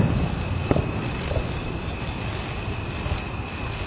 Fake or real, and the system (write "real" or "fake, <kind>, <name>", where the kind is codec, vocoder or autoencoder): real